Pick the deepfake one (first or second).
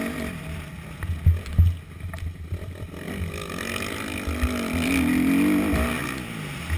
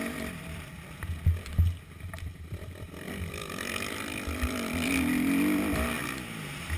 second